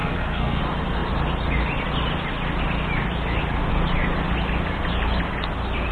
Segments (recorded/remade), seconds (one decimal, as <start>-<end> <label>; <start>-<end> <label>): 0.0-0.6 remade; 0.6-5.9 recorded